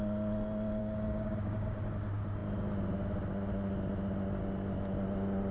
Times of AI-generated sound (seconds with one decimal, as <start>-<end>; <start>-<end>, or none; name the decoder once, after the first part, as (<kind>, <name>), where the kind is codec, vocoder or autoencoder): 0.8-1.8 (codec, DAC)